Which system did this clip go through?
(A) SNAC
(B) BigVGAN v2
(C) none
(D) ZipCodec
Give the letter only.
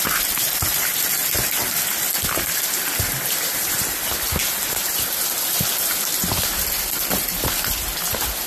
C